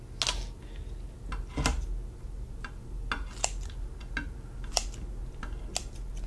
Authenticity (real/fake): real